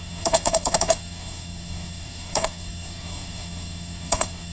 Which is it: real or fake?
fake